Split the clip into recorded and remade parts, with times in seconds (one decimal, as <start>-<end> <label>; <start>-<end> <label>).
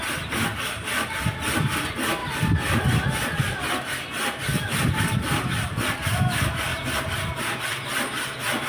0.0-4.5 recorded; 4.5-6.2 remade; 6.2-8.7 recorded